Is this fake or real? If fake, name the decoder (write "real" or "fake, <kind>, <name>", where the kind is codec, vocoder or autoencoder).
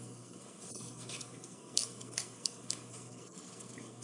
fake, codec, SNAC